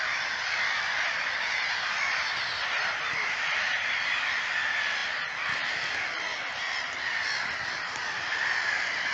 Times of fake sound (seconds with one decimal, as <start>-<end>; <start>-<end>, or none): none